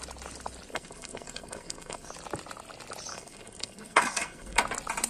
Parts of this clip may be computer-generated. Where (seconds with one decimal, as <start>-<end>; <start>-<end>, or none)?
0.7-2.1; 3.1-4.6